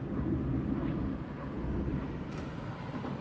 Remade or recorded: recorded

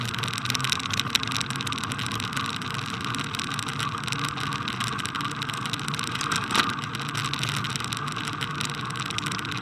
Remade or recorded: recorded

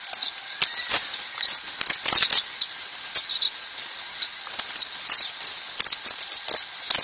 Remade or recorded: recorded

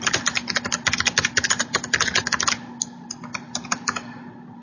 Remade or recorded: recorded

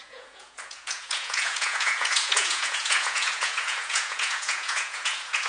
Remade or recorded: remade